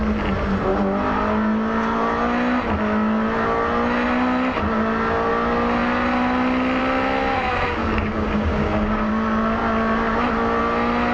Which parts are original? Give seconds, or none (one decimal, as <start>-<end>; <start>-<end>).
0.0-7.8; 9.1-11.1

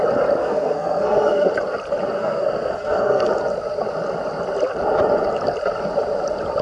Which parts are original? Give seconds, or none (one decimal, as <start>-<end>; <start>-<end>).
0.0-0.4; 1.5-2.2; 3.3-6.6

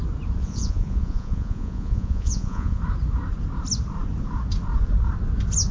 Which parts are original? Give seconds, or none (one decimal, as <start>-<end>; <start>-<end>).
0.0-0.4; 2.8-5.7

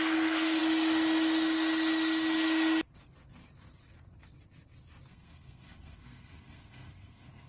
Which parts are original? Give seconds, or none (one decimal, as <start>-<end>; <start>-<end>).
0.6-5.1

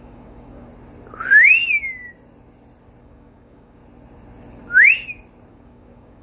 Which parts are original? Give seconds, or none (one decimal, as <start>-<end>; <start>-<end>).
0.7-3.0; 3.8-5.5

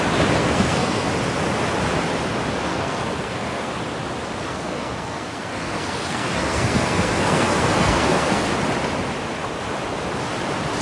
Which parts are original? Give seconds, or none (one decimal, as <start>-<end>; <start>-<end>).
0.0-0.4; 1.1-2.7; 3.7-4.5; 8.5-10.8